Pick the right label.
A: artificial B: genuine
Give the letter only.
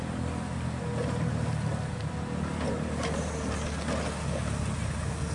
B